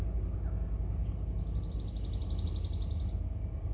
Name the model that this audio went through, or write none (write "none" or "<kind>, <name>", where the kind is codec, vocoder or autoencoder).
none